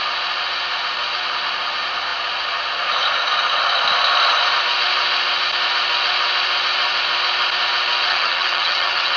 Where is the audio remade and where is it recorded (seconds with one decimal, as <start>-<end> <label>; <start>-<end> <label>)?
0.0-8.1 recorded; 8.1-9.2 remade

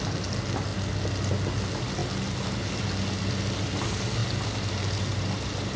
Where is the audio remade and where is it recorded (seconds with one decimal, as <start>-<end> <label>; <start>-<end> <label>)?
0.0-5.8 recorded

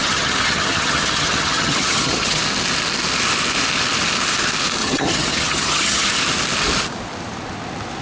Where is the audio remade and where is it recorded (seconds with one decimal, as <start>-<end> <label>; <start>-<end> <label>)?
0.0-2.4 remade; 2.4-4.8 recorded; 4.8-6.1 remade; 6.1-8.0 recorded

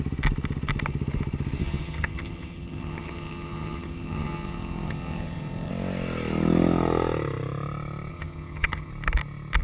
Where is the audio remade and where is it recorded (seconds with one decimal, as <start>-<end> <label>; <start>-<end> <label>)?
0.0-1.6 recorded; 1.6-5.7 remade; 5.7-8.1 recorded; 8.1-8.9 remade; 8.9-9.6 recorded

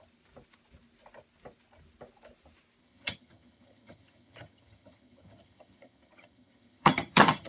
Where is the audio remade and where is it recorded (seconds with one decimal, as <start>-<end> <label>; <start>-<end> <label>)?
0.0-2.8 recorded; 2.8-7.5 remade

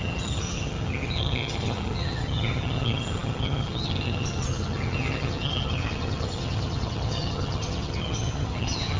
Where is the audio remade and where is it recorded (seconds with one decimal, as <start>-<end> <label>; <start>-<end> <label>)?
0.0-9.0 remade

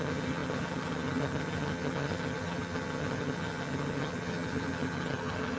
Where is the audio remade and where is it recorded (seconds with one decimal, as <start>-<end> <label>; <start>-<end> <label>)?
0.0-5.6 remade

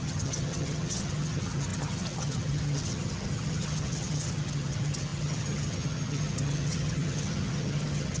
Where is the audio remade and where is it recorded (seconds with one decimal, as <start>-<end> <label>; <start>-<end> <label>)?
0.0-8.2 remade